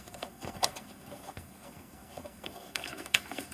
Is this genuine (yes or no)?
no